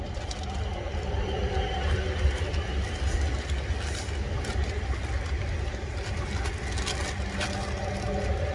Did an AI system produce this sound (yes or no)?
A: no